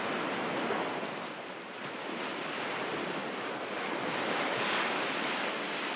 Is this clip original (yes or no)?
yes